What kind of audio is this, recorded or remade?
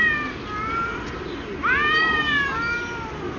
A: recorded